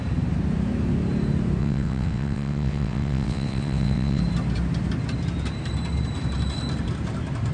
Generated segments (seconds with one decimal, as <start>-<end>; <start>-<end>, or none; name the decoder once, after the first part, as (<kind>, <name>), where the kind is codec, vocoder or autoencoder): 1.6-4.2 (vocoder, WaveNeXt)